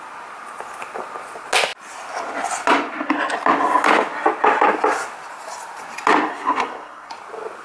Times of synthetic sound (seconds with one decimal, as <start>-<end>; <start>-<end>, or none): 6.3-7.1